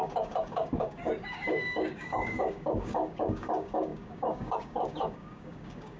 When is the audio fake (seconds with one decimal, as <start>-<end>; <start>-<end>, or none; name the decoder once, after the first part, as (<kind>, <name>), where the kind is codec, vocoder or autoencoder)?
0.0-6.0 (codec, DAC)